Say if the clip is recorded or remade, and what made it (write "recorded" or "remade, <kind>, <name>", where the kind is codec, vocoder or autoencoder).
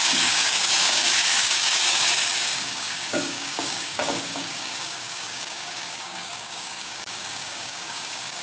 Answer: remade, codec, DAC